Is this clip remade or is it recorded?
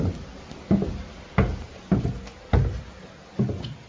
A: recorded